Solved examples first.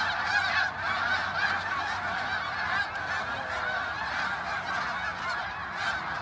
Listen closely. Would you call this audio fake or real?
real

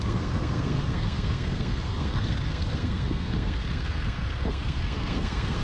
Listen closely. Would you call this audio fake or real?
fake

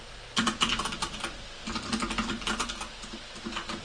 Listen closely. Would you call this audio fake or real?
real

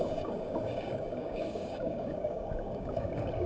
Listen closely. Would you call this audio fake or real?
fake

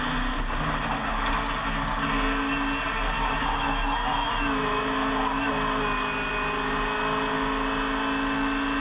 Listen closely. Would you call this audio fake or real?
real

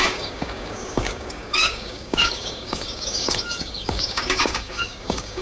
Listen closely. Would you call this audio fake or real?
fake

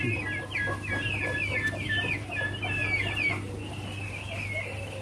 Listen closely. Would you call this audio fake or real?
real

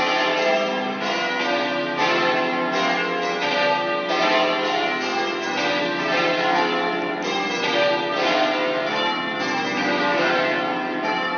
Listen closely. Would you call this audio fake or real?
real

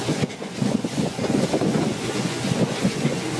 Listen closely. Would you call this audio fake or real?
fake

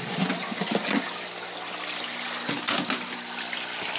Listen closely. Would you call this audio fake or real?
real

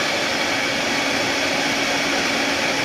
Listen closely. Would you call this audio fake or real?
real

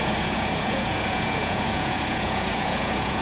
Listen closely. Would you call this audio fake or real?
fake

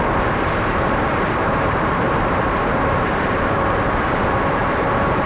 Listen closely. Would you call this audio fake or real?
fake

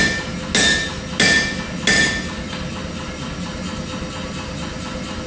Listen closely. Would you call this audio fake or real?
real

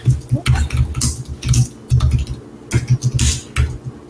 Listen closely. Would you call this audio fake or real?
real